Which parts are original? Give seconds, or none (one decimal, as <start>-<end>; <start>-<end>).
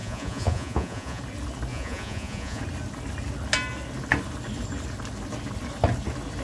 1.2-1.7; 2.6-6.4